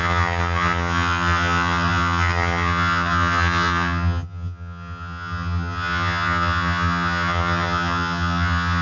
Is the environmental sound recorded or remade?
remade